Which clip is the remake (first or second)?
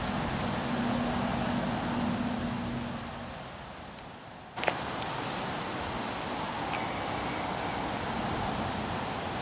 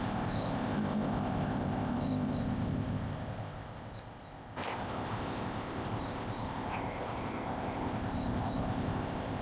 second